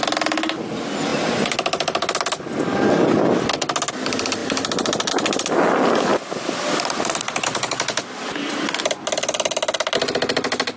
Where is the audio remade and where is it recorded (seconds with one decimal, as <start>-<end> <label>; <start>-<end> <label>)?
0.0-4.4 recorded; 4.4-5.1 remade; 5.1-6.1 recorded; 6.1-8.8 remade; 8.8-10.8 recorded